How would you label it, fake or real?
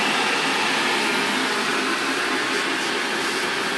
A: real